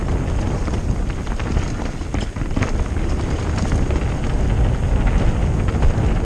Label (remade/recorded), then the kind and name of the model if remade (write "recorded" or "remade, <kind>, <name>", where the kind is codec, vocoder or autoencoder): recorded